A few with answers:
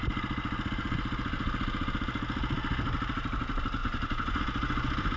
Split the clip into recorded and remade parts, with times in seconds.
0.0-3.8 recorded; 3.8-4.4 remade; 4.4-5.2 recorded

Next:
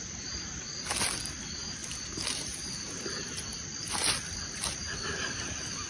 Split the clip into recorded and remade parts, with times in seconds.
0.0-5.9 recorded

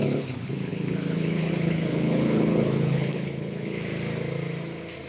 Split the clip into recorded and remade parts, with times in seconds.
0.0-3.9 remade; 3.9-5.1 recorded

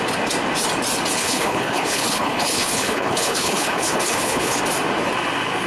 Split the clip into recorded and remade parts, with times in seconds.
0.0-1.2 recorded; 1.2-4.6 remade; 4.6-5.7 recorded

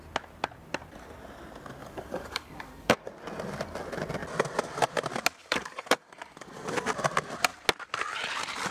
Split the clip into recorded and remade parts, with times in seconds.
0.0-1.8 recorded; 1.8-3.1 remade; 3.1-5.4 recorded; 5.4-6.5 remade; 6.5-8.7 recorded

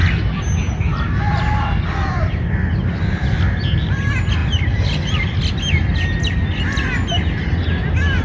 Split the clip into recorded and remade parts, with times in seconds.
0.0-4.4 recorded; 4.4-5.4 remade; 5.4-8.2 recorded